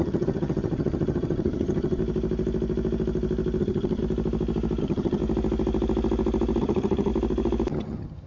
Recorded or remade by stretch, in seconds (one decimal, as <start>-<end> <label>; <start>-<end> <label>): 0.0-2.0 remade; 2.0-3.6 recorded; 3.6-4.0 remade; 4.0-4.8 recorded; 4.8-5.2 remade; 5.2-6.6 recorded; 6.6-7.1 remade; 7.1-7.7 recorded; 7.7-8.3 remade